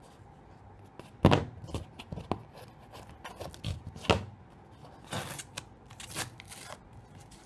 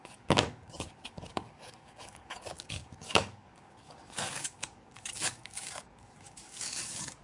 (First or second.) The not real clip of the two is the second